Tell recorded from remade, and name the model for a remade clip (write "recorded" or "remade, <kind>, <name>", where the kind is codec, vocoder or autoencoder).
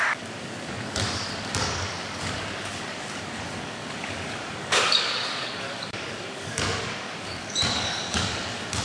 remade, codec, DAC